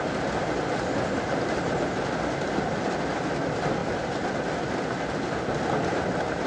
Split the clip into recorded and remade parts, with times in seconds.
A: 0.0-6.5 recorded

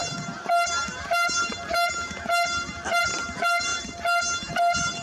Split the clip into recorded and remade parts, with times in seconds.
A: 0.0-5.0 recorded

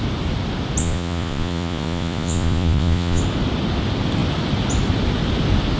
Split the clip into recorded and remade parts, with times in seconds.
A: 0.0-0.8 recorded; 0.8-3.2 remade; 3.2-5.8 recorded

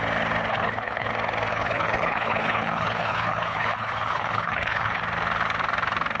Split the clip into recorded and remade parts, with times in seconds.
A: 0.0-0.5 recorded; 0.5-1.1 remade; 1.1-1.5 recorded; 1.5-5.0 remade; 5.0-6.2 recorded

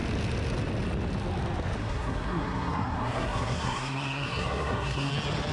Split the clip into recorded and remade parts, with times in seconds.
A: 0.0-1.8 recorded; 1.8-5.1 remade; 5.1-5.5 recorded

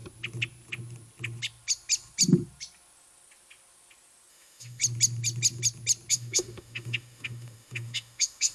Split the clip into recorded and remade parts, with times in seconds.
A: 0.0-4.3 recorded; 4.3-4.8 remade; 4.8-6.1 recorded; 6.1-8.5 remade

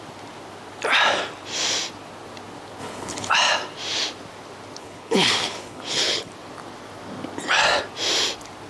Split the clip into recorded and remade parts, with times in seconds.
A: 0.0-2.8 recorded; 2.8-3.3 remade; 3.3-4.8 recorded; 4.8-6.3 remade; 6.3-8.7 recorded